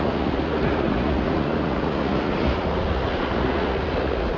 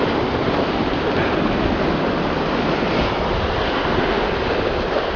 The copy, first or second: first